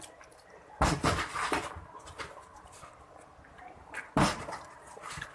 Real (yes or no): yes